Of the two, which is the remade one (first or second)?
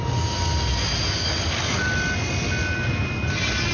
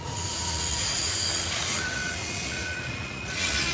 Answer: second